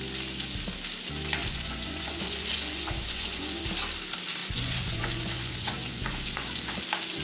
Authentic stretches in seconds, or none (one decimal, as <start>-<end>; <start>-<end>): 0.0-1.4; 3.6-4.4; 6.8-7.2